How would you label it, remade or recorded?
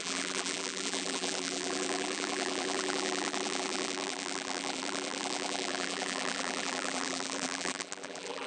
remade